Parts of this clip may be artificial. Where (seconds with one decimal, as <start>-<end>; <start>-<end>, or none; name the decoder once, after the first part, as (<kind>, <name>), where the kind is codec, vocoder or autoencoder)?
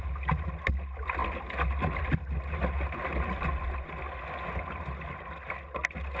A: none